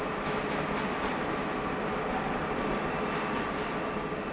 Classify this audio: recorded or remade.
recorded